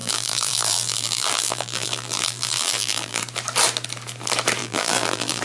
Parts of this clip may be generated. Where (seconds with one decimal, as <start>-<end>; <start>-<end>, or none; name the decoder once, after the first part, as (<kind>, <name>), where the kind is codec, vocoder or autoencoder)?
0.0-3.2 (vocoder, BigVGAN v2); 4.6-5.4